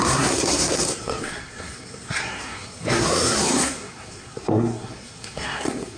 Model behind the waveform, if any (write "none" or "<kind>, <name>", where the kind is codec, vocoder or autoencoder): codec, SNAC